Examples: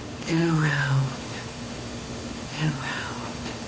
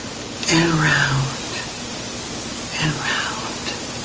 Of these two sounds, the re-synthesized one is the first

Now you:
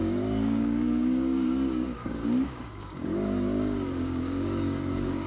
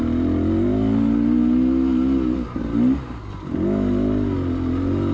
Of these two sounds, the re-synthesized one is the first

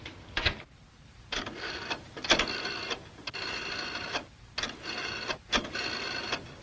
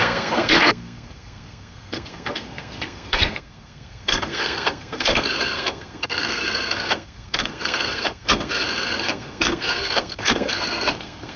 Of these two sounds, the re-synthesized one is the second